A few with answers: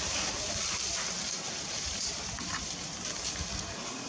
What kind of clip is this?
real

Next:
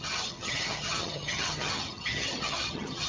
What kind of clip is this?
fake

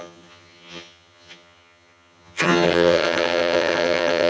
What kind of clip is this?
fake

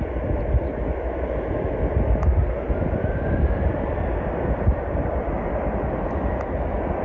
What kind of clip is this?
real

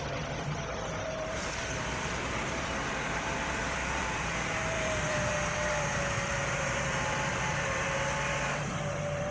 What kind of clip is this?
fake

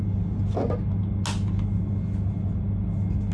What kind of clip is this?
real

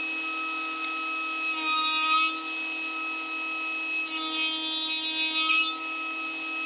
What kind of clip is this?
real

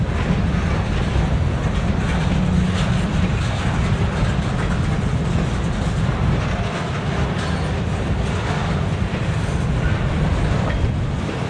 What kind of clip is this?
real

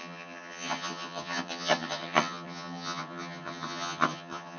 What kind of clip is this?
fake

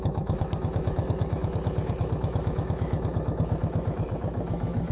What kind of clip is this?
fake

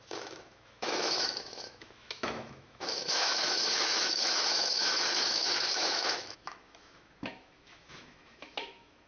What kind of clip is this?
fake